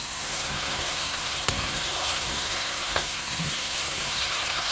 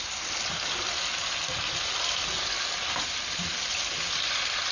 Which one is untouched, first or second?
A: second